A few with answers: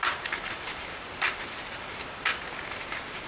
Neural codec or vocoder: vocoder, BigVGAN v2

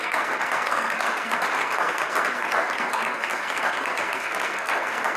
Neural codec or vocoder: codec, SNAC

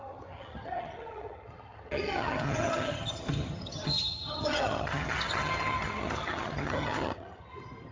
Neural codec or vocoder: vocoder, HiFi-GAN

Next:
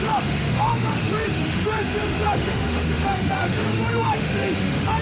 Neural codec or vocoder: autoencoder, DAC-VAE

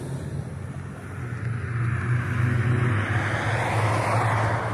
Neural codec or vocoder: none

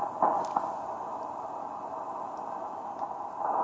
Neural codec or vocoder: none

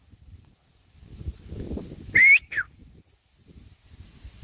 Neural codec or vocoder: none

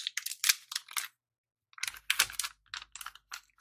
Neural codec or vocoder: none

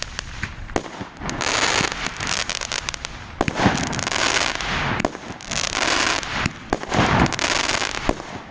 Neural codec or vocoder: none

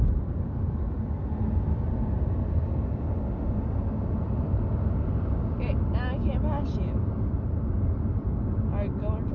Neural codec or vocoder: none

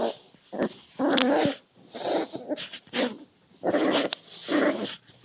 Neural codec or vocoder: none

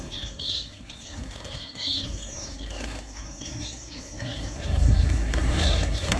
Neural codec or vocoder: codec, SNAC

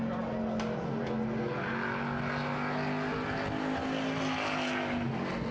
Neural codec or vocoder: none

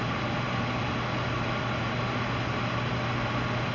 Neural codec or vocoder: none